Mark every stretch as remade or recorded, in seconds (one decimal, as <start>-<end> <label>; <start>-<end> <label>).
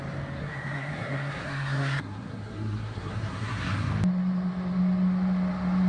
0.0-0.4 recorded; 0.4-3.9 remade; 3.9-5.9 recorded